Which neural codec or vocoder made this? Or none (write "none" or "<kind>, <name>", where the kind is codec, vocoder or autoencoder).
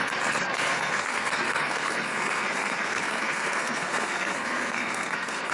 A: codec, SNAC